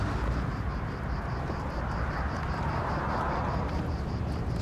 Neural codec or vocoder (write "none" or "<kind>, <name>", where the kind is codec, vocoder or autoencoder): vocoder, BigVGAN v2